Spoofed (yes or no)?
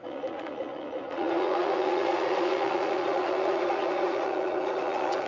yes